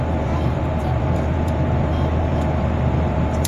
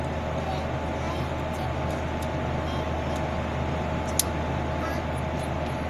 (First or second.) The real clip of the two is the second